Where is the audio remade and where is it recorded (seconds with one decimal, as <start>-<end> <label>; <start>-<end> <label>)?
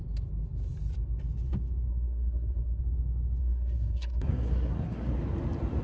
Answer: 0.0-1.9 recorded; 1.9-2.8 remade; 2.8-3.4 recorded; 3.4-5.1 remade; 5.1-5.8 recorded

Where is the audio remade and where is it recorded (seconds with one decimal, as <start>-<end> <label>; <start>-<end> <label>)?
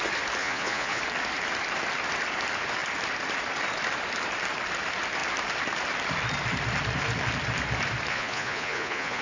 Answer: 0.0-0.4 recorded; 0.4-1.0 remade; 1.0-8.1 recorded; 8.1-9.2 remade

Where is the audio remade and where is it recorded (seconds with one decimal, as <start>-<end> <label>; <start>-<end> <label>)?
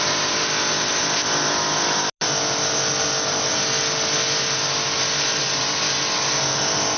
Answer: 0.0-7.0 recorded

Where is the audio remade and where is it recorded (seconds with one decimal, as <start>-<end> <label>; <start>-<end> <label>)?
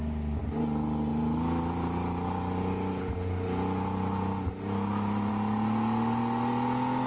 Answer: 0.0-7.1 recorded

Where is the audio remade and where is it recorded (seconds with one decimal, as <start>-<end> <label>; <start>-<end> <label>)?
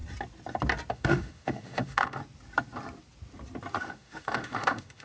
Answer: 0.0-0.9 recorded; 0.9-2.2 remade; 2.2-3.8 recorded; 3.8-5.0 remade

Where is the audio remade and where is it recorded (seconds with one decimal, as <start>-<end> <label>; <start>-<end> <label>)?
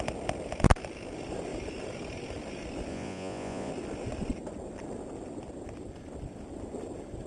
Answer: 0.0-2.9 recorded; 2.9-3.7 remade; 3.7-7.3 recorded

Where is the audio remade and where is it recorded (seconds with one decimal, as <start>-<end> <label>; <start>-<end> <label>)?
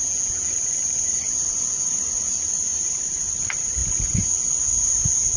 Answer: 0.0-0.5 remade; 0.5-5.4 recorded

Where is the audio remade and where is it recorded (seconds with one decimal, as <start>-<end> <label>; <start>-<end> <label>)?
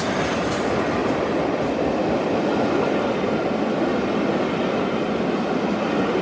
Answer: 0.0-6.2 recorded